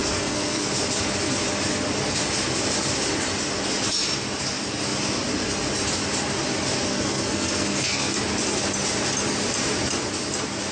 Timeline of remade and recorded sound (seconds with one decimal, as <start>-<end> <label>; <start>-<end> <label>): 0.0-0.7 remade; 0.7-6.9 recorded; 6.9-8.2 remade; 8.2-10.7 recorded